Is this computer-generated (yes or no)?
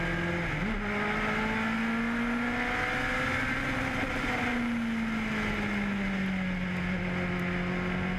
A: no